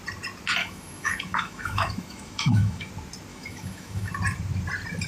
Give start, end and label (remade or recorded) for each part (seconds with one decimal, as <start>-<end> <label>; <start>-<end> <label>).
0.0-0.6 recorded; 0.6-2.9 remade; 2.9-3.3 recorded; 3.3-4.1 remade; 4.1-5.1 recorded